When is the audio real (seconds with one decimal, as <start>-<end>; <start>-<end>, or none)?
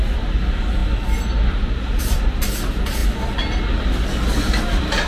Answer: 0.0-5.1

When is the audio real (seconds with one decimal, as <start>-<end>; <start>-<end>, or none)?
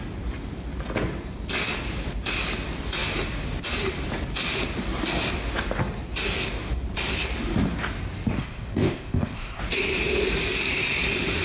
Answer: 0.0-8.4; 9.6-11.4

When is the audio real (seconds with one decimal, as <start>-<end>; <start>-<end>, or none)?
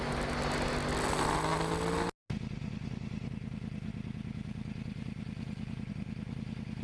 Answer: 0.0-6.8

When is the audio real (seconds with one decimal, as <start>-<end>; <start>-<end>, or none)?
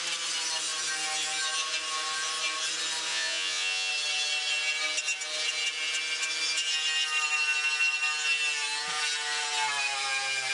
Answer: 0.0-3.1; 3.9-10.5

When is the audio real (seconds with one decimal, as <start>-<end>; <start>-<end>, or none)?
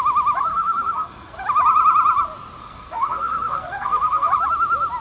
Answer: 0.0-0.5; 1.4-2.6; 4.3-5.0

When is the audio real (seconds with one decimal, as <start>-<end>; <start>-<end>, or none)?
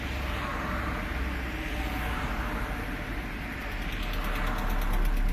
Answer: 0.0-5.3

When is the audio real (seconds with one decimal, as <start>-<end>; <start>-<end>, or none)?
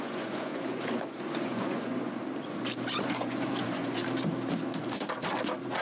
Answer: 2.2-3.0; 4.0-5.8